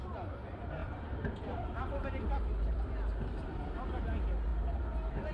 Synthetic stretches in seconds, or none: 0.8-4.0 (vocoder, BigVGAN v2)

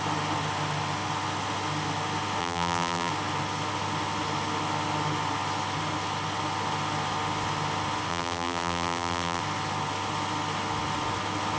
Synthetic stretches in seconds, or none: 2.4-3.1 (vocoder, BigVGAN v2); 8.1-9.4

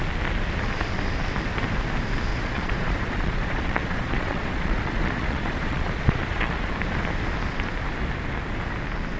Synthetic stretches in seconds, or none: 2.3-6.7 (vocoder, Vocos)